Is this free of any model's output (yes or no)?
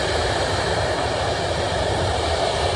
no